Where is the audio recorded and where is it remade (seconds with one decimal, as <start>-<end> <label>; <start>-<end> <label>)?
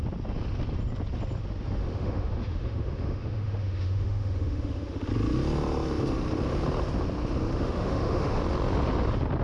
0.0-1.8 recorded; 1.8-5.1 remade; 5.1-7.5 recorded; 7.5-8.4 remade; 8.4-9.4 recorded